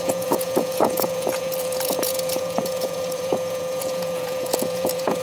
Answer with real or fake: fake